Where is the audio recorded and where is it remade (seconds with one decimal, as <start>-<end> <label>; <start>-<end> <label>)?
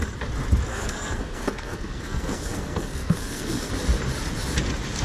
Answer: 0.0-0.7 recorded; 0.7-3.7 remade; 3.7-5.0 recorded